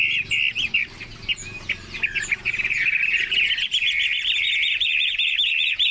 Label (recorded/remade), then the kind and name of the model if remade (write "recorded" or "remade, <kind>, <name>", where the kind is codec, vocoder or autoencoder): recorded